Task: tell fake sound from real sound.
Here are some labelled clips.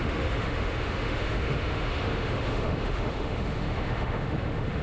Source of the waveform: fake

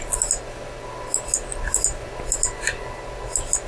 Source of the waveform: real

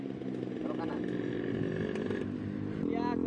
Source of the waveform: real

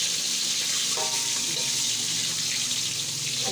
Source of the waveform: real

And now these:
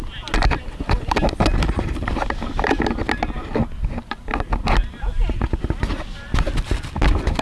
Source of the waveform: real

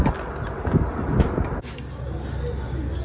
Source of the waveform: real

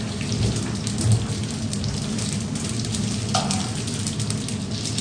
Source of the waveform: real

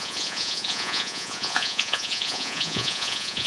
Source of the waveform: fake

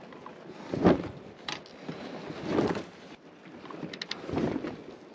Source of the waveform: real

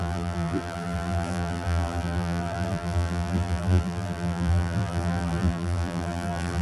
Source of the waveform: fake